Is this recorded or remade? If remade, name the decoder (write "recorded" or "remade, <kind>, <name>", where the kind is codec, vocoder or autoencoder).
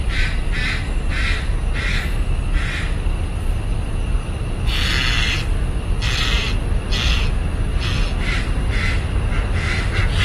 recorded